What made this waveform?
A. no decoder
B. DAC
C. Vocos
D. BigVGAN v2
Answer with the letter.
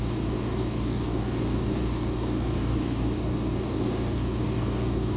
B